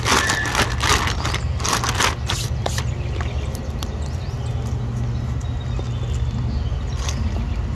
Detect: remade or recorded recorded